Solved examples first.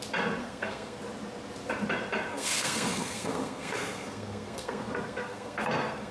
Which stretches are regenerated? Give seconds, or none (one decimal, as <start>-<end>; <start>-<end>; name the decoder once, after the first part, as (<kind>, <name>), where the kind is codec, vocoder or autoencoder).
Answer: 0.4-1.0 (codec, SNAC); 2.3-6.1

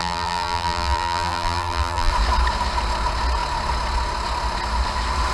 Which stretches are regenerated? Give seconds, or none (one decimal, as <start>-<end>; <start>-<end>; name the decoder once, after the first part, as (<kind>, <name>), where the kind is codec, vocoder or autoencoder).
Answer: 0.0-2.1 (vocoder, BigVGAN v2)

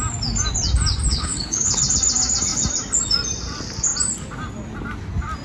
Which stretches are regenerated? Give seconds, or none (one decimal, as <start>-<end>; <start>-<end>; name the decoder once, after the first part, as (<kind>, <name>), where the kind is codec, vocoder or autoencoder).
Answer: 1.1-1.8 (codec, HILCodec)

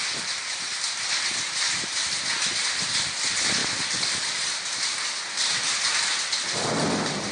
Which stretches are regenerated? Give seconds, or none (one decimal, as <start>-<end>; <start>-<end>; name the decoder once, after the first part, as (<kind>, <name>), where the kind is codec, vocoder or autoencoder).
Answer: none

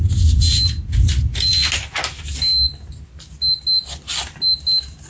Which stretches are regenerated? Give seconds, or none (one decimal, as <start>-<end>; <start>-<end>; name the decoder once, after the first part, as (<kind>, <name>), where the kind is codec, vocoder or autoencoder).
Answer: none

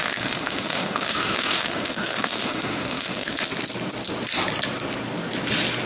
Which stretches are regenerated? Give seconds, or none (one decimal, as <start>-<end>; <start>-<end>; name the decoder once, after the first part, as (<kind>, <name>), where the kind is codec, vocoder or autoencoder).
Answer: 0.0-3.5 (autoencoder, DAC-VAE)

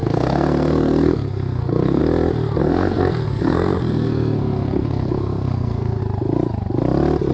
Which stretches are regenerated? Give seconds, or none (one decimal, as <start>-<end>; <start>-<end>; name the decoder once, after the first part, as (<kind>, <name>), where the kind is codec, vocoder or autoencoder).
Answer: 0.0-2.0 (codec, SNAC); 2.6-6.0